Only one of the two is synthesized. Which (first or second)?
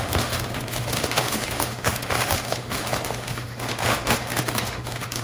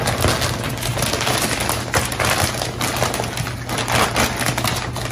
first